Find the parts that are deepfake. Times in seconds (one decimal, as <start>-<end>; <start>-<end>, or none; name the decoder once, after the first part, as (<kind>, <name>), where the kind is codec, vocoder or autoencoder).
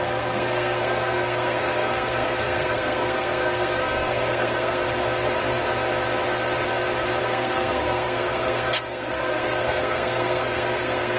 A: 0.0-4.8 (codec, SNAC); 7.2-11.2